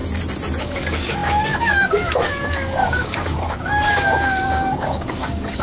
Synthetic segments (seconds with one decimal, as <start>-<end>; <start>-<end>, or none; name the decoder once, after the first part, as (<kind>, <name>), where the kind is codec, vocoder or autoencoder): 0.6-5.6 (codec, DAC)